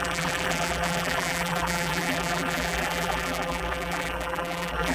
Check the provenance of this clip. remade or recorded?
remade